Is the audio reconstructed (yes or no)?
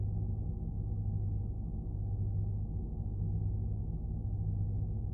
no